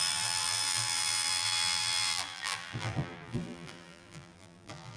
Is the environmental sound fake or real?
fake